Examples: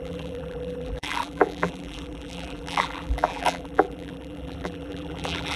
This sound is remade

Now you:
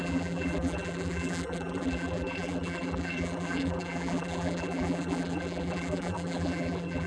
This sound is remade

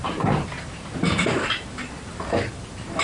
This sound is remade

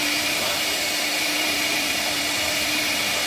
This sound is remade